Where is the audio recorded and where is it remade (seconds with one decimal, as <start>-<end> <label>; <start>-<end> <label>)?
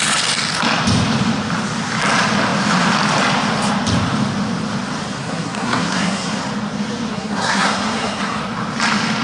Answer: 0.0-5.1 recorded; 5.1-6.4 remade; 6.4-7.1 recorded; 7.1-8.4 remade; 8.4-9.2 recorded